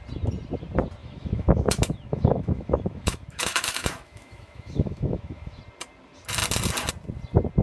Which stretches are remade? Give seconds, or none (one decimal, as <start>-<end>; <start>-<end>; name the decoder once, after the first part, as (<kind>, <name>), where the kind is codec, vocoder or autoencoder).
1.0-5.6 (autoencoder, DAC-VAE)